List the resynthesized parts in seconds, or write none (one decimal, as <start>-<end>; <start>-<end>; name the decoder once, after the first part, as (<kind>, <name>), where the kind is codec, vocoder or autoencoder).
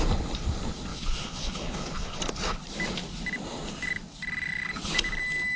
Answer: 0.9-2.2 (vocoder, Vocos)